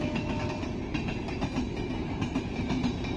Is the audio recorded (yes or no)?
yes